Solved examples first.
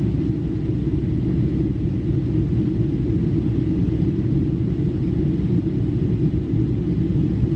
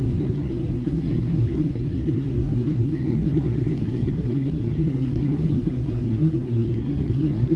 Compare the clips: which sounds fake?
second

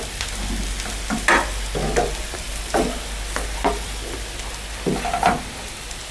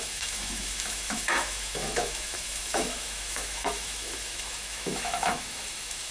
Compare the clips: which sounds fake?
second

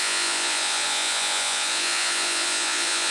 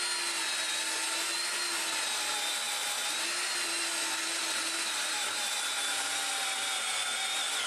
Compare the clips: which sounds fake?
first